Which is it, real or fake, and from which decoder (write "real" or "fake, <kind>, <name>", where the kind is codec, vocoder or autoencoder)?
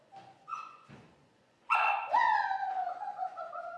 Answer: fake, vocoder, Vocos